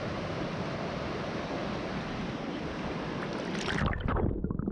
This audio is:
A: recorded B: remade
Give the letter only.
A